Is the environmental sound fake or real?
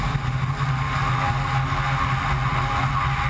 real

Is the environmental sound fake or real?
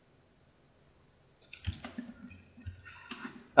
real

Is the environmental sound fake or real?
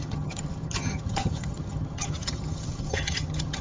fake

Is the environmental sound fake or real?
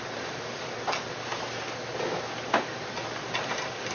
real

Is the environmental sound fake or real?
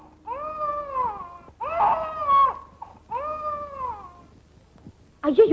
real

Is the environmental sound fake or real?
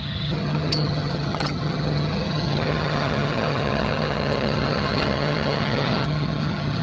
fake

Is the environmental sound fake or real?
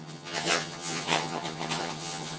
fake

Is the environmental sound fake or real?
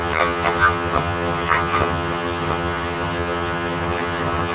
fake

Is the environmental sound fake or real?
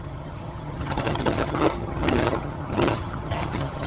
fake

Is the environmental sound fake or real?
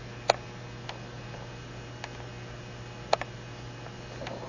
real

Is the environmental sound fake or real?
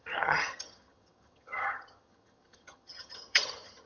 fake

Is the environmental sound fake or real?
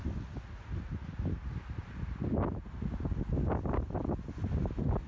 real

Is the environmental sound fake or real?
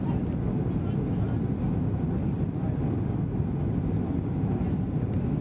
real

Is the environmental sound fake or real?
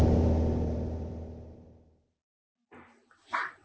real